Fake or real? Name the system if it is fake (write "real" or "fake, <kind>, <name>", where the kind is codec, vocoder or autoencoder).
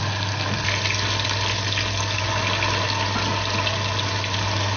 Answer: real